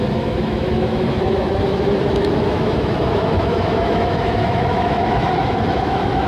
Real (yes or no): no